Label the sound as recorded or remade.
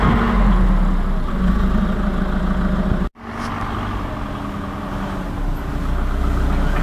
recorded